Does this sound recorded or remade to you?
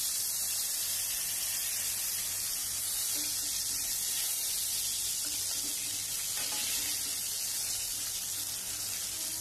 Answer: recorded